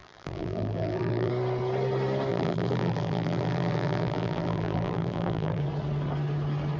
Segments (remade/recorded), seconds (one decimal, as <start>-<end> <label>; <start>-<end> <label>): 0.0-1.3 remade; 1.3-2.3 recorded; 2.3-5.6 remade; 5.6-6.8 recorded